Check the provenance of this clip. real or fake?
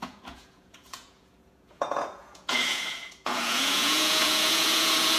fake